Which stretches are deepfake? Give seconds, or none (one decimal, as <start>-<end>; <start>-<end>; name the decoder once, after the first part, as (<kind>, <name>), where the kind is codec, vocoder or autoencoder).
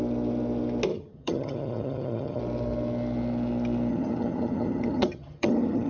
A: 0.9-2.4 (vocoder, HiFi-GAN); 3.9-5.9